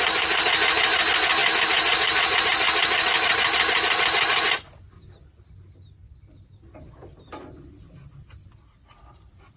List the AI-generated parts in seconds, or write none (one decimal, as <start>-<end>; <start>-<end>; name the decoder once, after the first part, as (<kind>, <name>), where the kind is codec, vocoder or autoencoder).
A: 0.0-3.1 (vocoder, BigVGAN v2); 6.8-9.6